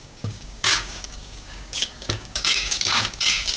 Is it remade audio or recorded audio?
remade